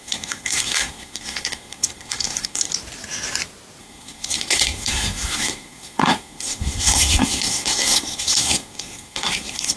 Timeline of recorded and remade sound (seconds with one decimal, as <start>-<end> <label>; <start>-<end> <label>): 0.0-2.7 remade; 2.7-3.8 recorded; 3.8-9.8 remade